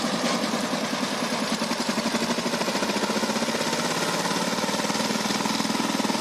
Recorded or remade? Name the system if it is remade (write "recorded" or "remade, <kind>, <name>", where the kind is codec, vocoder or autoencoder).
recorded